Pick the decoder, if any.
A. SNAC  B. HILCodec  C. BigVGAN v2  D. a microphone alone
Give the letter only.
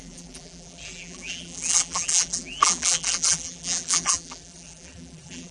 C